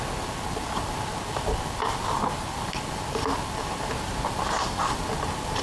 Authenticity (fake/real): real